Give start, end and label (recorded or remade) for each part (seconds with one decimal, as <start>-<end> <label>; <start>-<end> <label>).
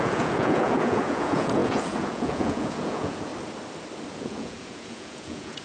0.0-3.3 remade; 3.3-4.1 recorded; 4.1-5.6 remade